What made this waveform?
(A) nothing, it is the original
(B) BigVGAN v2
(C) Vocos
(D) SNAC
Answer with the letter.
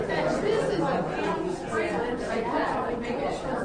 C